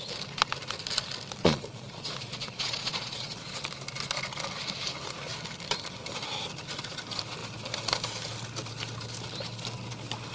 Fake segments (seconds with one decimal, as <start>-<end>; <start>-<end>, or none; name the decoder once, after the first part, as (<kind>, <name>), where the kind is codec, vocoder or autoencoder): 1.4-3.6 (vocoder, Vocos)

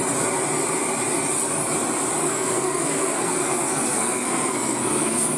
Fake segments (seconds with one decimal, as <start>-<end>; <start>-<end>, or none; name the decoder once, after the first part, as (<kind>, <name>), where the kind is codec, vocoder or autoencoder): 2.2-5.4 (codec, SNAC)

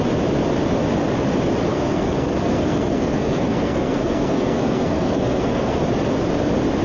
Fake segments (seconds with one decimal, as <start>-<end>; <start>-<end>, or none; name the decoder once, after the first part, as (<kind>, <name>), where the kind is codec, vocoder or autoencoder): 1.7-5.8 (codec, SNAC)

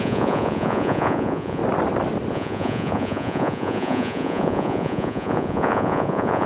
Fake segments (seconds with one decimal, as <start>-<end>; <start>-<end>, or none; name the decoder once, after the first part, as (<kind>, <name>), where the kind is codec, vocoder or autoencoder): 0.0-1.6 (vocoder, Vocos); 2.3-6.5

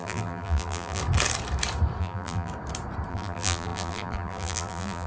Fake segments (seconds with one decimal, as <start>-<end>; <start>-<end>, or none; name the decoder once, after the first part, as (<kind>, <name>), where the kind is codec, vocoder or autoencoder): 0.0-1.0 (vocoder, BigVGAN v2); 2.0-2.5; 3.1-5.1

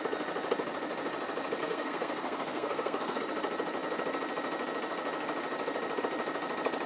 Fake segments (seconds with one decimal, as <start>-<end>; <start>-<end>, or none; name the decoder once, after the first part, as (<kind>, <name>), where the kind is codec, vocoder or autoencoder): 1.6-3.2 (codec, SNAC)

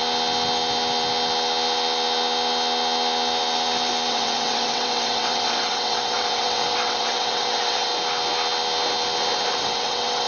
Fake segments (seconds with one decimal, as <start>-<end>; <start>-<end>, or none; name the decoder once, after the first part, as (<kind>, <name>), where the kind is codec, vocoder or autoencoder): 4.1-7.9 (vocoder, WaveNeXt); 9.6-10.3